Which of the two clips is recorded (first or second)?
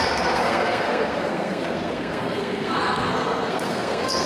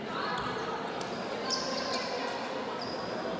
second